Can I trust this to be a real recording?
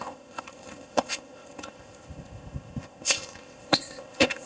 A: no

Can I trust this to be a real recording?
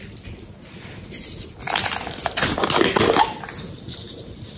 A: yes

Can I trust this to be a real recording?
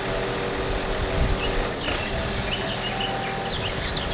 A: yes